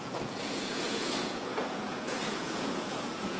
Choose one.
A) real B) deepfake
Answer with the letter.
B